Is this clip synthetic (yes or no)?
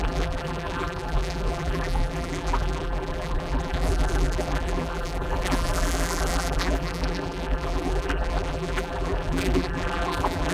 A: yes